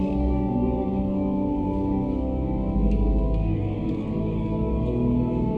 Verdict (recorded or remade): remade